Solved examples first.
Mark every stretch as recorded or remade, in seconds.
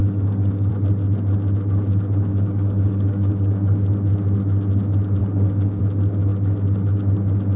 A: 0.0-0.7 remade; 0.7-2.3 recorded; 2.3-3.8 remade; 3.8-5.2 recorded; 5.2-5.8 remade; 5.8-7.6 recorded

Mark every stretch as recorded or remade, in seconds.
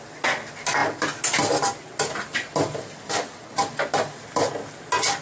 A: 0.0-5.2 recorded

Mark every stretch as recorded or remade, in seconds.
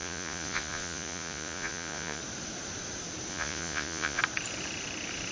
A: 0.0-2.2 remade; 2.2-3.3 recorded; 3.3-4.2 remade; 4.2-5.3 recorded